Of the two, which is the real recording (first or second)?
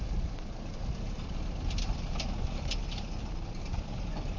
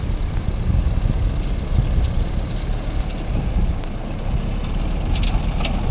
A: second